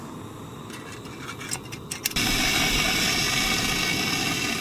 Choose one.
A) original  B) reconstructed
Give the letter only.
A